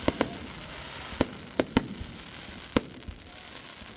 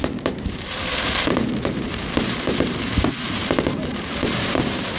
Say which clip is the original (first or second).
first